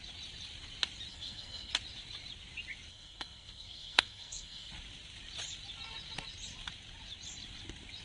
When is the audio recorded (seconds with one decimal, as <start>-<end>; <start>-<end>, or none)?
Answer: 0.0-1.1; 1.7-2.9; 4.7-8.0